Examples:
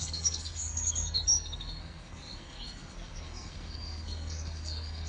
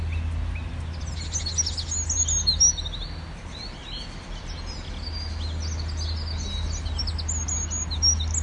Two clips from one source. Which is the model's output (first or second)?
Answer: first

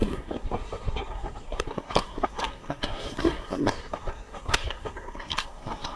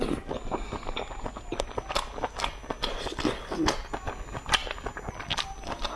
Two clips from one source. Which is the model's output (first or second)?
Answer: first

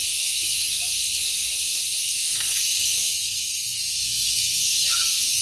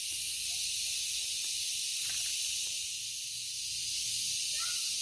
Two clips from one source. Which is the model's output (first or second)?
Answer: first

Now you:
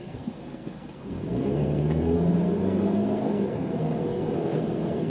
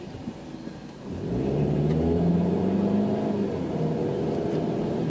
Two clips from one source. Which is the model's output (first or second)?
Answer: first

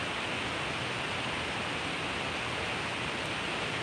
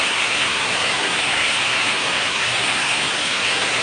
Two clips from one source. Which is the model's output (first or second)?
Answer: second